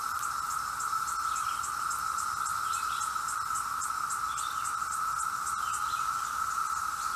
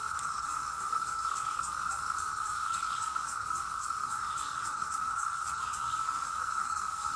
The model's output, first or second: second